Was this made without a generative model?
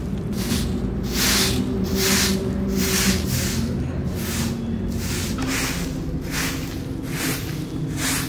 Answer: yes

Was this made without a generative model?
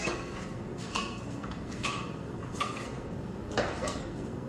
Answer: no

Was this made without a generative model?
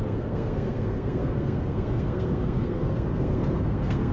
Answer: no